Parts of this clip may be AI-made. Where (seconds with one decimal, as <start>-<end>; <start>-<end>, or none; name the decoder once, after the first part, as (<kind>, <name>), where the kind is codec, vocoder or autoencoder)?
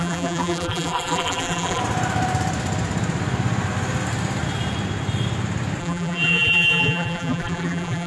0.0-1.8 (vocoder, BigVGAN v2); 5.8-8.1